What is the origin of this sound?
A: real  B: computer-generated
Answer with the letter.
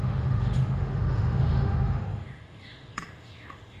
B